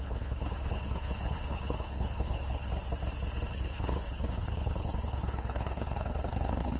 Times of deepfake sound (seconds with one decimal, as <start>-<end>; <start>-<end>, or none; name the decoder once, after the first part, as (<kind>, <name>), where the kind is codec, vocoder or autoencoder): 0.0-2.7 (codec, HILCodec); 3.5-6.8